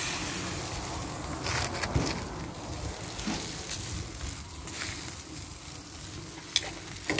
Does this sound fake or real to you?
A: real